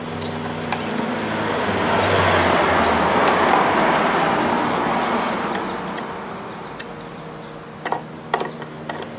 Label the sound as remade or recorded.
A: recorded